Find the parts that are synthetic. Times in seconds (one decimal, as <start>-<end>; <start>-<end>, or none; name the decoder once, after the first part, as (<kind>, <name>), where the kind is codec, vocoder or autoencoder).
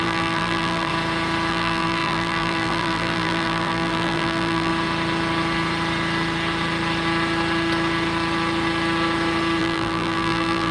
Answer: 0.0-0.9 (vocoder, BigVGAN v2); 1.5-4.7; 9.6-10.7